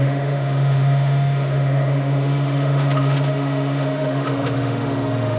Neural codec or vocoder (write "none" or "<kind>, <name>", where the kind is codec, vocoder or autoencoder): autoencoder, DAC-VAE